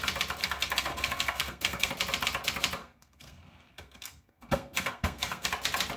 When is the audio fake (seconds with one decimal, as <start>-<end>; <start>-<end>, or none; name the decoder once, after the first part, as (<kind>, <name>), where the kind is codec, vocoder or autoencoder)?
0.4-1.9 (codec, SNAC); 2.8-5.5